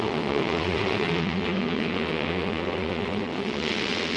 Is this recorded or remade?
remade